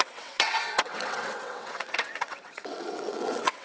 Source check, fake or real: fake